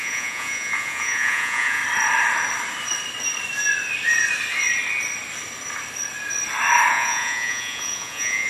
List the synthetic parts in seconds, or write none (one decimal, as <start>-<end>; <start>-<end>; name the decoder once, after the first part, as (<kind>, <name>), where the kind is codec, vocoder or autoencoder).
0.0-1.8 (vocoder, Vocos); 6.9-8.5